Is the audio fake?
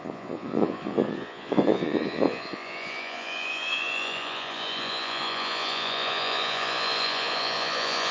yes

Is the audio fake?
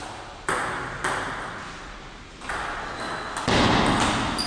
no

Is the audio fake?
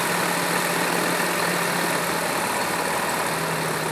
no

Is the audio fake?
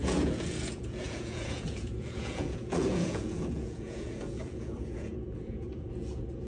yes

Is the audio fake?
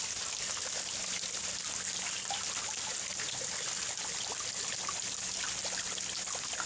no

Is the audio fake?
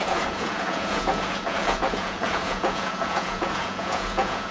yes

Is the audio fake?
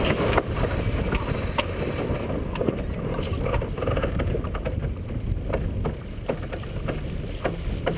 no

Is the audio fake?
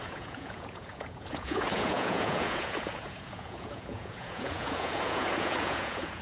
yes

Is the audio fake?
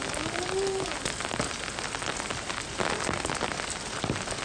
no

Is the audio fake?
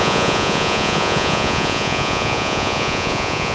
yes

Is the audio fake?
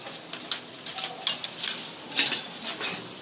no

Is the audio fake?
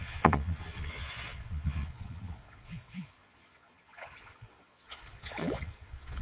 yes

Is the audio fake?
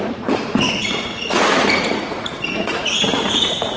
yes